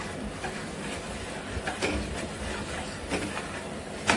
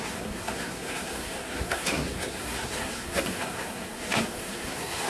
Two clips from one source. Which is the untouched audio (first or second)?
first